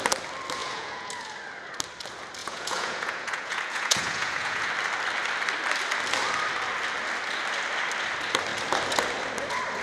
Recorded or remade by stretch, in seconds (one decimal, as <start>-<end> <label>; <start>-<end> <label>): 0.0-0.6 recorded; 0.6-1.1 remade; 1.1-2.4 recorded; 2.4-4.7 remade; 4.7-9.8 recorded